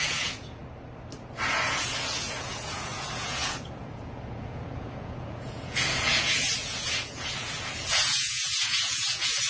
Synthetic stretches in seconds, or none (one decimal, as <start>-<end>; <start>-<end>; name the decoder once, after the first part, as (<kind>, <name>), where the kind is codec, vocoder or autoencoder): 0.0-0.6 (vocoder, Vocos); 1.5-9.5